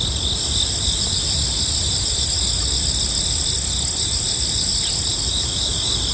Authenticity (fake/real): real